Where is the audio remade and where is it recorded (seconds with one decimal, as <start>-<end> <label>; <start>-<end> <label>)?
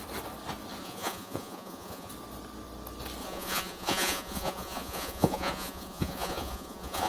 0.0-0.8 recorded; 0.8-2.1 remade; 2.1-3.2 recorded; 3.2-7.1 remade